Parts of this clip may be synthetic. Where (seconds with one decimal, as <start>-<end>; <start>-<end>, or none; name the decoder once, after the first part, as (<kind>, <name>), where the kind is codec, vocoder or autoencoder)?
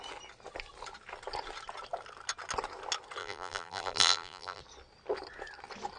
3.2-4.6 (vocoder, BigVGAN v2)